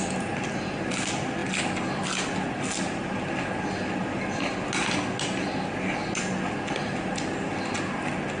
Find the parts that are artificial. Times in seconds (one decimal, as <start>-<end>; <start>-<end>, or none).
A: none